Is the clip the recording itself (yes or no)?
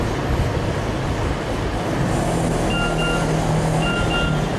yes